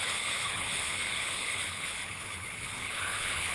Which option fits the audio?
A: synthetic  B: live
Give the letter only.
A